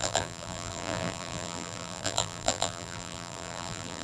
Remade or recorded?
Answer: remade